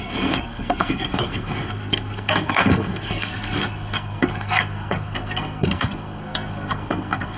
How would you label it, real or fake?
fake